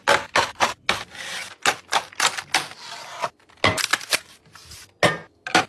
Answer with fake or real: real